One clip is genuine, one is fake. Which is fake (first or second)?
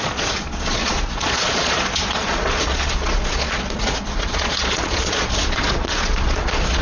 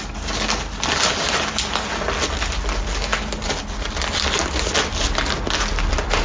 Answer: first